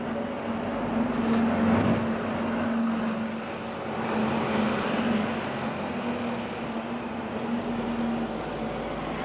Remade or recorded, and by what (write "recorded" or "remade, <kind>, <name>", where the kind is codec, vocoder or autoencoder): recorded